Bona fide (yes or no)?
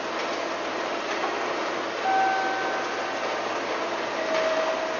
yes